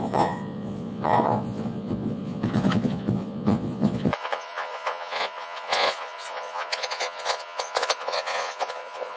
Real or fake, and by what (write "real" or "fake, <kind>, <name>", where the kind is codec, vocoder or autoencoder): fake, vocoder, Vocos